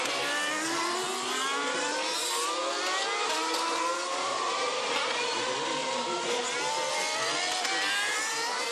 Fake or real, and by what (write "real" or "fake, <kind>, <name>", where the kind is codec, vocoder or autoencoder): real